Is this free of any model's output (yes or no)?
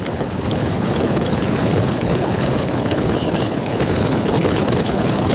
no